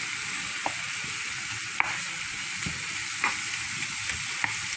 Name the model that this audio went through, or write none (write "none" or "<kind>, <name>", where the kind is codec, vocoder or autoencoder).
none